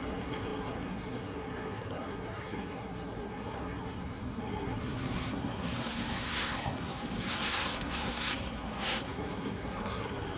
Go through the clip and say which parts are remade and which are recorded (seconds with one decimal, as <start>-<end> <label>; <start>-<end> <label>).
0.0-10.4 remade